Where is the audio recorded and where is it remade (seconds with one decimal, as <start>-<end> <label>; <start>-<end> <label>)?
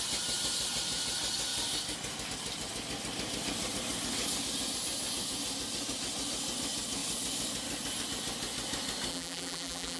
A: 0.0-9.1 recorded; 9.1-10.0 remade